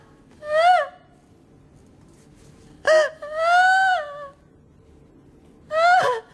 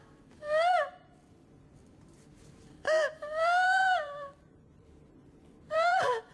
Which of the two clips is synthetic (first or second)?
second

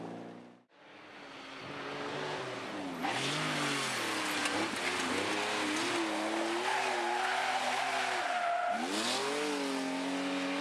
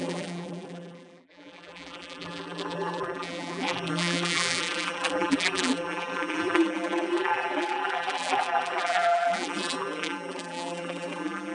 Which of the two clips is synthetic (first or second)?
second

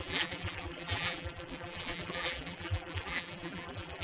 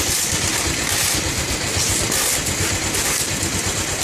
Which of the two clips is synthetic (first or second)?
first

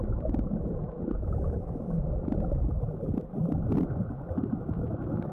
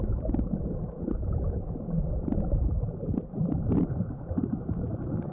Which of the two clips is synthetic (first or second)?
second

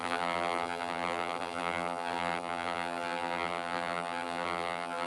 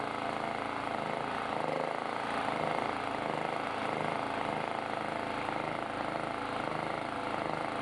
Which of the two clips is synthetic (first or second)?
first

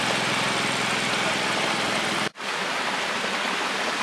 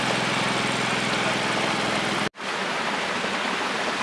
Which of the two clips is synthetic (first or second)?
first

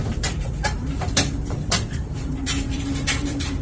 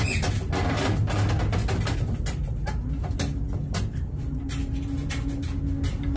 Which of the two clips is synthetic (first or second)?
first